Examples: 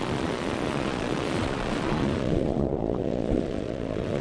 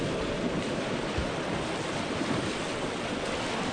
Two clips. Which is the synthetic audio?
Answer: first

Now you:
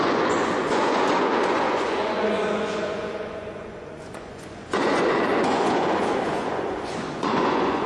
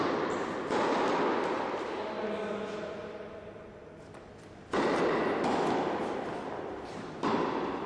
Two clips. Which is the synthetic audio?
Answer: first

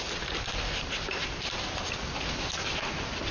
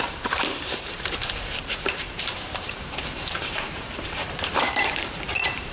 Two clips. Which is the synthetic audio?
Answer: second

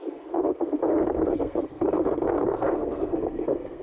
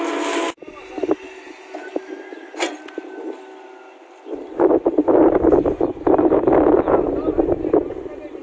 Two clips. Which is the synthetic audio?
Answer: first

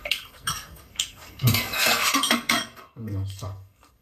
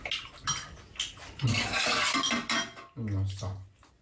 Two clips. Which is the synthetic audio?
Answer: first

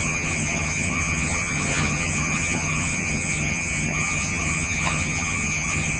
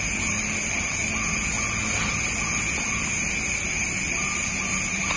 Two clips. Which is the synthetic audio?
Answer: first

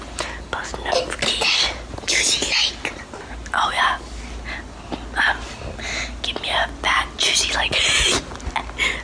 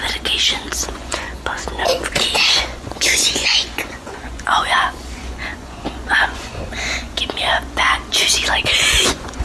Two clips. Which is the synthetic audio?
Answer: second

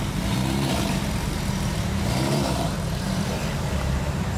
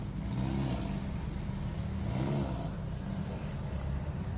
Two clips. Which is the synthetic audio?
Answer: first